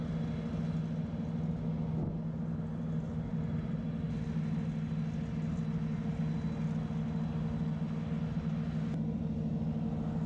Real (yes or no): yes